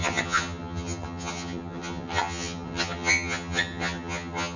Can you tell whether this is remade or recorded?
remade